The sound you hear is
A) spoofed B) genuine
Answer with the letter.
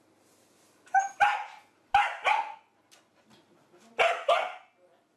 B